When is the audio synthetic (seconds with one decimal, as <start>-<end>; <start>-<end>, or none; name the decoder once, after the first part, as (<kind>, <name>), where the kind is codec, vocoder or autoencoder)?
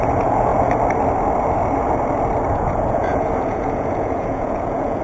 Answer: 0.0-0.5 (vocoder, Vocos); 2.5-5.0